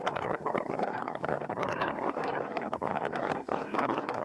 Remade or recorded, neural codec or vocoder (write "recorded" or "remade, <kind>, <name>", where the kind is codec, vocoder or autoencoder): remade, codec, SNAC